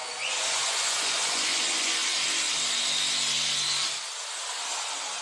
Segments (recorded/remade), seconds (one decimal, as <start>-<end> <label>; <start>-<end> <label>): 0.0-2.0 remade; 2.0-5.2 recorded

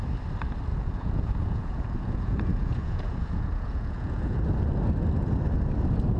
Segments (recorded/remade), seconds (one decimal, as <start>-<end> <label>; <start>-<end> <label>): 0.0-0.7 recorded; 0.7-4.4 remade; 4.4-6.2 recorded

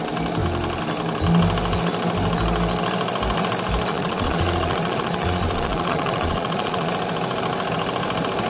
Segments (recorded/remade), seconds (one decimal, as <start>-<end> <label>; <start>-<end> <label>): 0.0-3.9 recorded; 3.9-6.9 remade; 6.9-8.5 recorded